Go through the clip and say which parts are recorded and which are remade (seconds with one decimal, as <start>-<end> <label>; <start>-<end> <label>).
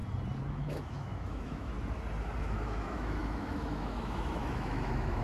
0.0-0.5 recorded; 0.5-1.7 remade; 1.7-2.4 recorded; 2.4-5.2 remade